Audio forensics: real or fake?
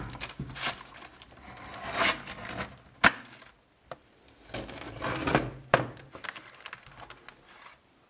real